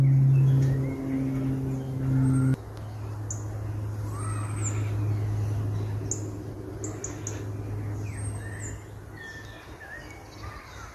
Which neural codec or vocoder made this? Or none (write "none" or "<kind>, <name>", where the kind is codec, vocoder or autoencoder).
none